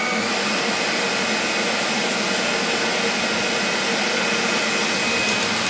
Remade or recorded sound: recorded